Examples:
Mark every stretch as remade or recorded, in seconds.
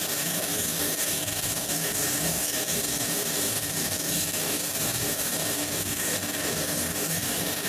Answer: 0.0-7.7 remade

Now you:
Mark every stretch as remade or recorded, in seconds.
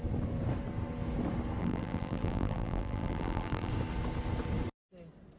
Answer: 0.0-1.6 recorded; 1.6-3.7 remade; 3.7-5.4 recorded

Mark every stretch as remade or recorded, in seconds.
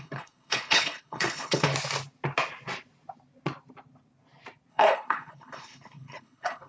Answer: 0.0-1.7 remade; 1.7-4.7 recorded; 4.7-6.7 remade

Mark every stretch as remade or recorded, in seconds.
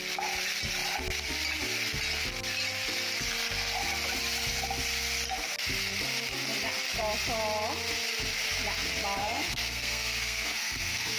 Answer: 0.0-9.2 recorded; 9.2-11.2 remade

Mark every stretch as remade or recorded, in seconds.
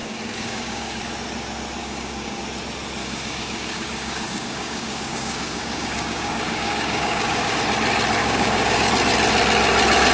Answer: 0.0-1.0 remade; 1.0-1.8 recorded; 1.8-2.4 remade; 2.4-3.0 recorded; 3.0-7.6 remade; 7.6-8.2 recorded; 8.2-8.9 remade; 8.9-10.1 recorded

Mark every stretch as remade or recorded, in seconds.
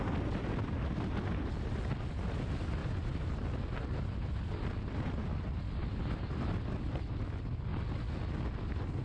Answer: 0.0-2.8 recorded; 2.8-4.4 remade; 4.4-9.0 recorded